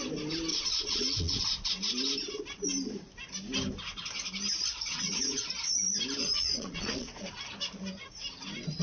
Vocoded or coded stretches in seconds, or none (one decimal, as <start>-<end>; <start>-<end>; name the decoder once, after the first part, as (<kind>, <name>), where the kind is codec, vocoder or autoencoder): 0.5-1.4 (vocoder, Vocos); 4.9-5.5; 6.2-7.3